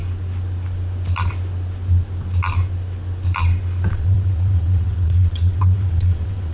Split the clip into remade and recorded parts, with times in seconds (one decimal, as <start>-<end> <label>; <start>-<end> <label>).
0.0-3.9 recorded; 3.9-6.5 remade